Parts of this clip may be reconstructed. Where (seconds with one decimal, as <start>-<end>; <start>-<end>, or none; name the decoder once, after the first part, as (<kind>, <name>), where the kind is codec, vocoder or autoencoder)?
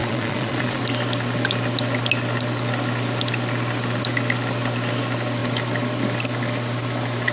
0.0-0.8 (vocoder, Vocos)